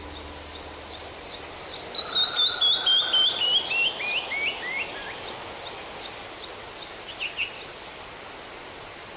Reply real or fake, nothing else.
real